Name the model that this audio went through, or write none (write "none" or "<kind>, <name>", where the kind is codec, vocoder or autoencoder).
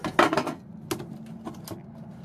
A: none